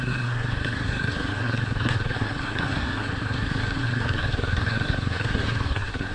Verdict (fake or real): fake